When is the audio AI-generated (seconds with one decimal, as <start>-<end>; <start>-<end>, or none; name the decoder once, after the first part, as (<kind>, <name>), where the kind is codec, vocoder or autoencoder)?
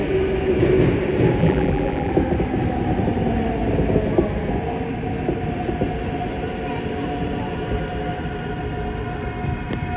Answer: 1.4-2.1 (vocoder, BigVGAN v2)